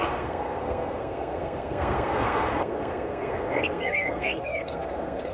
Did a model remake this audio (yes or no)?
yes